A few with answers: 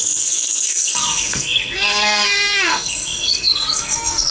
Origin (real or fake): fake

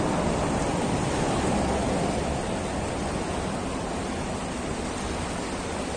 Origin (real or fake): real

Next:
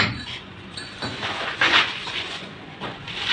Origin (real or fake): fake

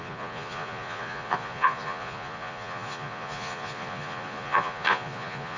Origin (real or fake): fake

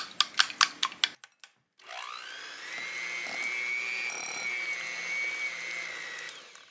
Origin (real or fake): real